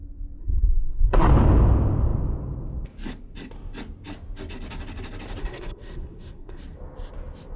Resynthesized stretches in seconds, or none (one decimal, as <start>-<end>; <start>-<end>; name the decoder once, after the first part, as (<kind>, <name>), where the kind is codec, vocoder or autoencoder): 0.4-1.3 (codec, SNAC); 5.4-6.6

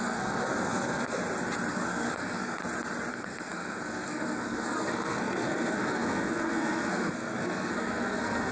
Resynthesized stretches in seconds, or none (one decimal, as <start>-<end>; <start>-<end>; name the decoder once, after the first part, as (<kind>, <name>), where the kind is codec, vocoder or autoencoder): 0.0-1.2 (codec, SNAC); 1.7-2.6; 3.1-8.5

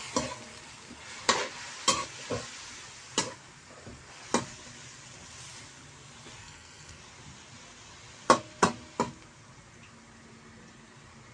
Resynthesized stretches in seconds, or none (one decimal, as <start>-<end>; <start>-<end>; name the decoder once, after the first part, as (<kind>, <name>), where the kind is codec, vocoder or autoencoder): 6.4-7.0 (codec, SNAC)

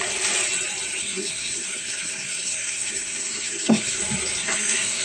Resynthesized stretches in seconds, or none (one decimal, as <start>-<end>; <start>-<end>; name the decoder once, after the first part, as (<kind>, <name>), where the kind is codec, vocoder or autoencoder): 1.0-4.0 (codec, SNAC); 4.4-5.0

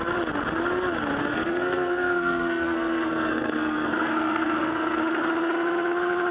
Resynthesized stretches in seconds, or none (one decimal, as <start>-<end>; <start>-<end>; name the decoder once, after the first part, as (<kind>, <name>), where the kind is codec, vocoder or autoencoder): 1.2-5.0 (codec, SNAC)